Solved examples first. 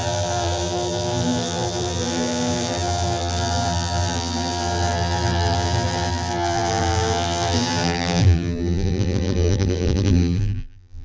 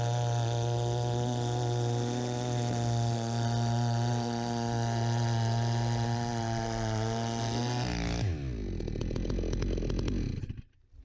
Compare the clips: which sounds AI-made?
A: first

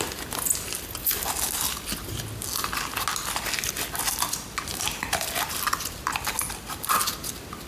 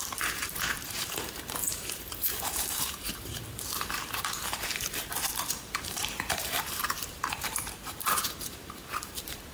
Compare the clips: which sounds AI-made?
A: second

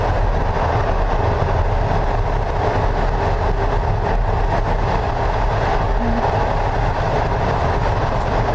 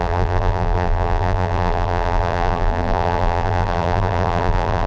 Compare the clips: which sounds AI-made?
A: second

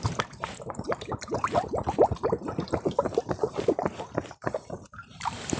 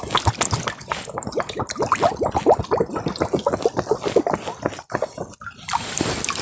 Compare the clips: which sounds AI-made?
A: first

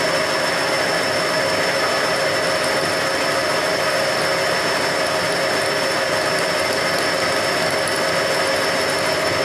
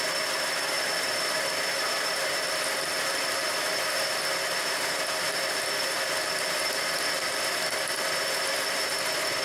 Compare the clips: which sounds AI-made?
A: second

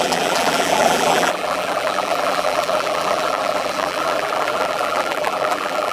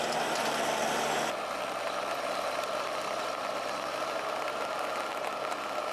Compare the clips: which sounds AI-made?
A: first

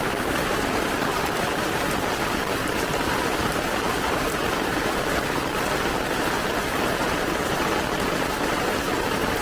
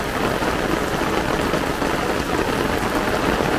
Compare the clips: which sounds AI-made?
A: first